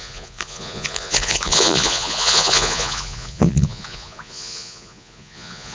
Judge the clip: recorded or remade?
remade